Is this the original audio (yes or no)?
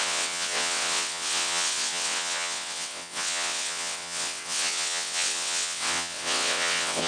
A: no